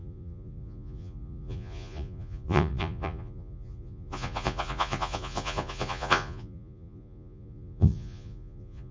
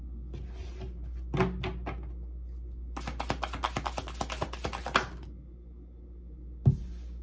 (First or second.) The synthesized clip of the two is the first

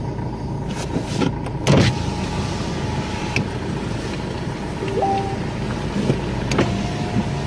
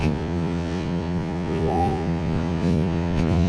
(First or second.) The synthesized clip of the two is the second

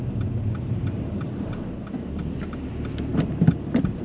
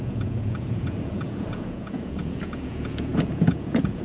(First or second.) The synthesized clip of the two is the second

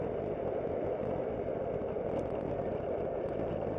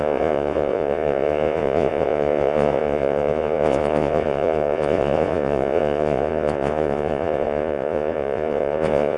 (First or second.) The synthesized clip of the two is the second